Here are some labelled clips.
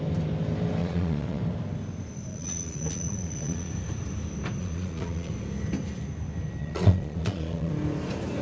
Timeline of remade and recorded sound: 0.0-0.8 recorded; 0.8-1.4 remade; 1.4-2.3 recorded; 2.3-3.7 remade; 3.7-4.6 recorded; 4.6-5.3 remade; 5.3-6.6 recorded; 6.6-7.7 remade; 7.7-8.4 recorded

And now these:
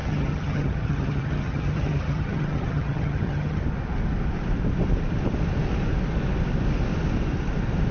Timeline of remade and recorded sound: 0.0-3.6 remade; 3.6-7.9 recorded

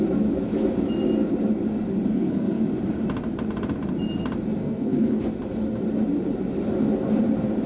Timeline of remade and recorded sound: 0.0-2.1 recorded; 2.1-2.6 remade; 2.6-4.6 recorded; 4.6-5.2 remade; 5.2-7.7 recorded

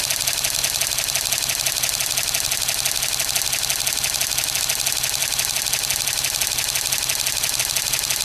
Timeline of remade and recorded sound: 0.0-8.2 recorded